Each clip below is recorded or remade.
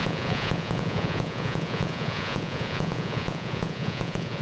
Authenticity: remade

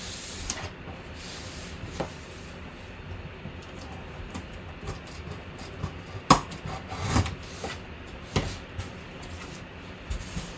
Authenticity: recorded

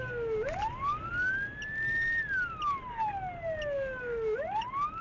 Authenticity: recorded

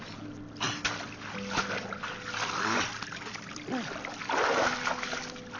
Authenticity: recorded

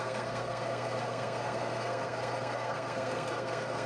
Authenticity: remade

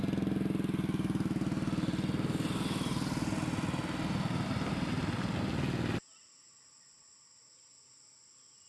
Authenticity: recorded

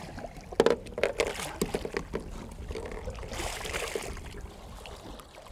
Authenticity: recorded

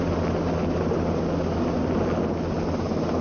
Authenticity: recorded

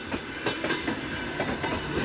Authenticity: recorded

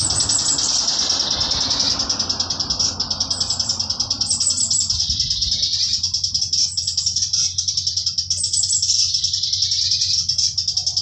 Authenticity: recorded